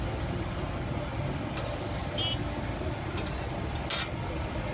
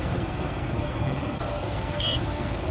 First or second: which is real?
first